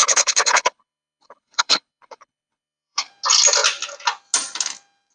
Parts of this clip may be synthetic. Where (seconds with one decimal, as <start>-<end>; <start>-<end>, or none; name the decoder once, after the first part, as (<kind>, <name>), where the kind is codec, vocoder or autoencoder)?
0.0-3.1 (codec, HILCodec)